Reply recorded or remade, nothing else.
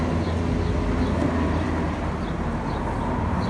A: recorded